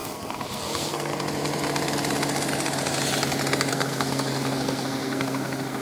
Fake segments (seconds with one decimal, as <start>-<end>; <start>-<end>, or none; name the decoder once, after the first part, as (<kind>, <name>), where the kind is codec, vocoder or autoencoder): 0.0-1.1 (codec, SNAC); 3.7-5.8